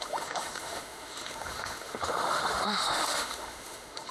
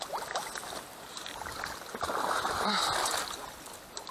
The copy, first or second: first